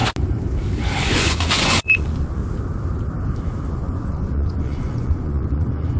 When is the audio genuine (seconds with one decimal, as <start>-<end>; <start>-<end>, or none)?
0.0-1.0; 2.4-3.7